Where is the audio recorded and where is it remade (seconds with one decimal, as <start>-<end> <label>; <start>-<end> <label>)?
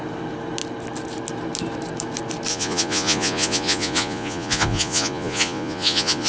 0.0-2.5 recorded; 2.5-6.3 remade